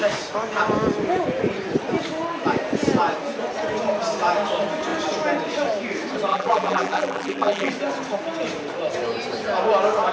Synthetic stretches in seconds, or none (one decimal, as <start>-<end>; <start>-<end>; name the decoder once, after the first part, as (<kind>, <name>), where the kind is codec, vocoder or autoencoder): 6.3-7.7 (vocoder, BigVGAN v2)